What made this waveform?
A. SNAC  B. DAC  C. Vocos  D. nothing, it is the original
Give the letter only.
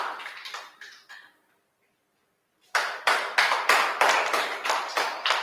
D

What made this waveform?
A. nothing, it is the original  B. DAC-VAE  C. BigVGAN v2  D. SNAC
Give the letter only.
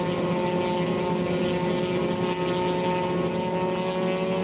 A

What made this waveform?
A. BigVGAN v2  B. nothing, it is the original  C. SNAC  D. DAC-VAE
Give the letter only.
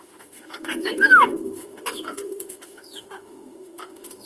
D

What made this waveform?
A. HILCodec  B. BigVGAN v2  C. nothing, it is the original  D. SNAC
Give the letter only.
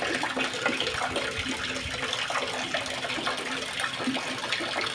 C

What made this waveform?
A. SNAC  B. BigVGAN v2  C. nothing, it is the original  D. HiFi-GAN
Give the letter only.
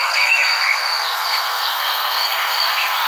A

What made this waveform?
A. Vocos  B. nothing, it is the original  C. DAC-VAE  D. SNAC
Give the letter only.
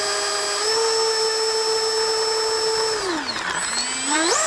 B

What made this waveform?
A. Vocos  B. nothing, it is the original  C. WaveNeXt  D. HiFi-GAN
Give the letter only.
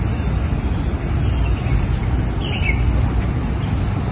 B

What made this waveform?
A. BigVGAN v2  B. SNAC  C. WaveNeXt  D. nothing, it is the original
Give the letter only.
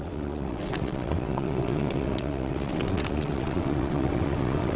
C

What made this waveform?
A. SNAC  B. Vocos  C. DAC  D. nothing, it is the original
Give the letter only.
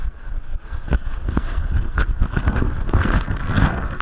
A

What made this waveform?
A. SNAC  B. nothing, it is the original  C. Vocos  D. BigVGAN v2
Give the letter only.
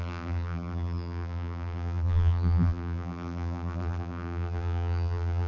D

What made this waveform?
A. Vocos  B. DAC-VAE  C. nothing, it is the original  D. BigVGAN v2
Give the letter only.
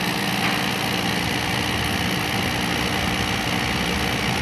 C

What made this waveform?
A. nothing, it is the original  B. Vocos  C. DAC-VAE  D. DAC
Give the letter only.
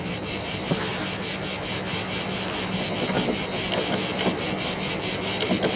A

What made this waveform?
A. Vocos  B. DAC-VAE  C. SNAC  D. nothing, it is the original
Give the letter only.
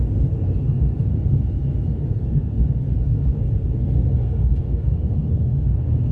C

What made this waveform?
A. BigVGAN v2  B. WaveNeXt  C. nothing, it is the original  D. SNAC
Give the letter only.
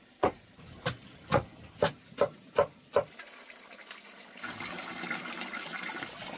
C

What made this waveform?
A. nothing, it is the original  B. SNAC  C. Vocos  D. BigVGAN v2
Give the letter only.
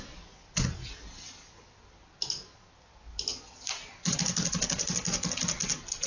A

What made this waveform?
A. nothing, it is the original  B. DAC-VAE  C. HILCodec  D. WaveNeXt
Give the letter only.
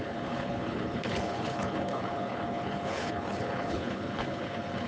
C